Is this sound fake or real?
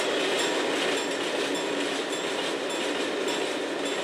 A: real